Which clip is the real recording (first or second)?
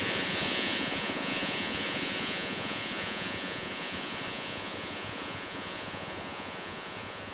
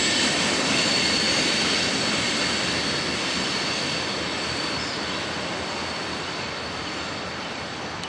second